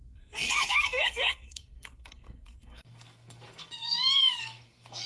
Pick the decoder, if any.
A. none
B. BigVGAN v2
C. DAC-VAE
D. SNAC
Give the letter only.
D